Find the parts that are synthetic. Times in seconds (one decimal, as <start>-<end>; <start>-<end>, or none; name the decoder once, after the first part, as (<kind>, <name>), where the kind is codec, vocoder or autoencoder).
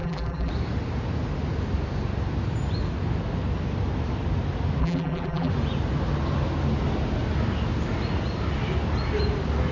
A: 0.0-0.5 (vocoder, BigVGAN v2); 4.8-5.5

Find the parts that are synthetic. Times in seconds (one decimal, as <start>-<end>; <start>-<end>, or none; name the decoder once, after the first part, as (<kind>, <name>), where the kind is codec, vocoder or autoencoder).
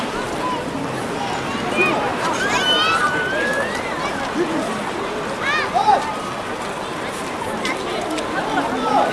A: 2.1-4.2 (vocoder, BigVGAN v2); 6.9-7.7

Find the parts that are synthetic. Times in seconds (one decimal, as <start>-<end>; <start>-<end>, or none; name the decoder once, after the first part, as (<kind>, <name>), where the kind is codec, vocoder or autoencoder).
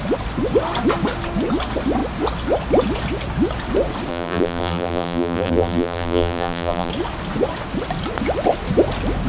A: 4.1-6.9 (vocoder, BigVGAN v2)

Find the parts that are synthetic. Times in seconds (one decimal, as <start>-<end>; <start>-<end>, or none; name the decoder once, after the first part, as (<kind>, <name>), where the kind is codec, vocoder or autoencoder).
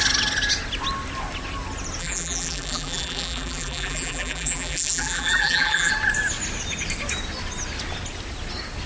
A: 2.0-5.9 (vocoder, BigVGAN v2)